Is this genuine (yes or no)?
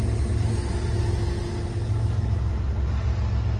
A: yes